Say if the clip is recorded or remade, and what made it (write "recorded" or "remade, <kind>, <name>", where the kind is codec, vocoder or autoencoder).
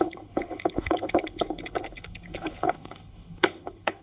remade, codec, HILCodec